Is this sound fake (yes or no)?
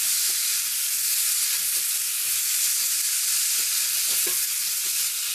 no